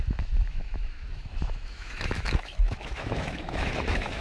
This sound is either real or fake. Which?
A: fake